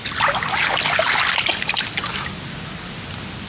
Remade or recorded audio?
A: recorded